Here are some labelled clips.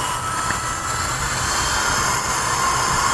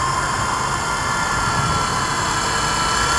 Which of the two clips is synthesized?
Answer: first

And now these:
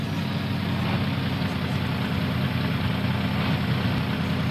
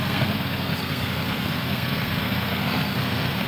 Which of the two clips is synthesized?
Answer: second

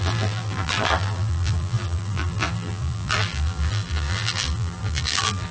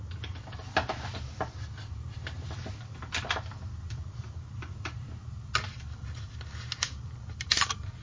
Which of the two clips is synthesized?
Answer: first